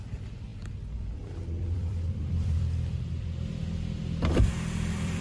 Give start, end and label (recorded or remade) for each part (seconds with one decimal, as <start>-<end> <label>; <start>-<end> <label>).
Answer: 0.0-5.2 remade